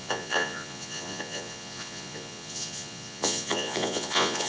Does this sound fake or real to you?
fake